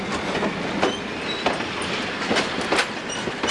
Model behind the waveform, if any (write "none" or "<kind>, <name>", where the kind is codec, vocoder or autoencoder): none